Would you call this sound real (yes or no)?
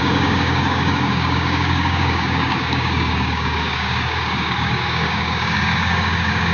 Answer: no